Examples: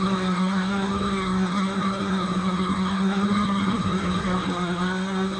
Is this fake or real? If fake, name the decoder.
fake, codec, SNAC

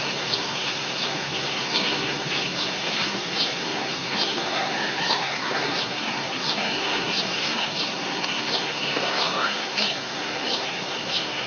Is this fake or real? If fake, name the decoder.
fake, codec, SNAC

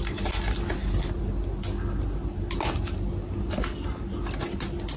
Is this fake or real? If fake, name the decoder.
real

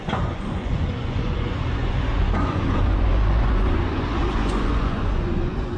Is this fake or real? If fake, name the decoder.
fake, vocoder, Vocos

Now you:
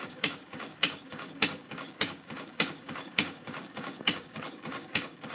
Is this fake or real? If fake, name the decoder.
fake, codec, DAC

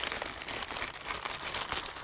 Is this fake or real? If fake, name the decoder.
real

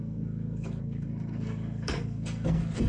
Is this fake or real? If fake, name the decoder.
fake, codec, SNAC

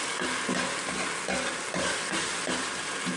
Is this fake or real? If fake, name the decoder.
real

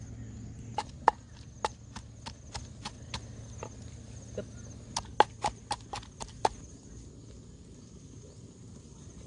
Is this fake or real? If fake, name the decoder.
real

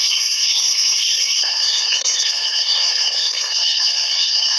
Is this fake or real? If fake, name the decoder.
fake, codec, SNAC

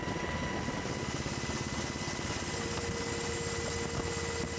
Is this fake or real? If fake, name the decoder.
real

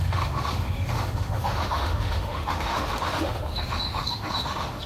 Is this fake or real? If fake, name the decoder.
fake, autoencoder, DAC-VAE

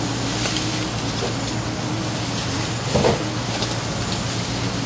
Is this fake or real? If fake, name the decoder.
real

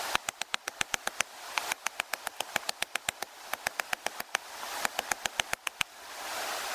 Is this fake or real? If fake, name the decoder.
real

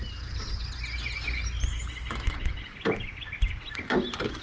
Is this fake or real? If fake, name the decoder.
real